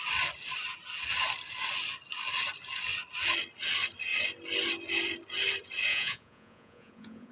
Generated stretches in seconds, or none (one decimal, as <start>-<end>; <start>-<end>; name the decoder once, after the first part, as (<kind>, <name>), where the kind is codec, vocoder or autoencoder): 5.9-7.3 (vocoder, Vocos)